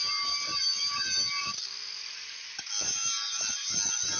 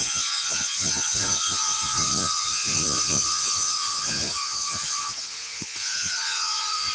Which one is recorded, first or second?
first